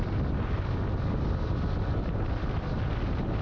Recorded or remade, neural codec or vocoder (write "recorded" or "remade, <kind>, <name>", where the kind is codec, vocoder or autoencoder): recorded